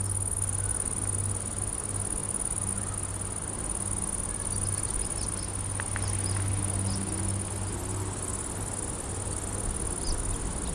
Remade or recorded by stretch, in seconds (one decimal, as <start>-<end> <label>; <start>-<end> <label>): 0.0-10.7 recorded